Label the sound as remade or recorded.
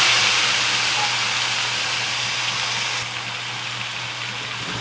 recorded